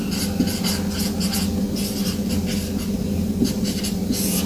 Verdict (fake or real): real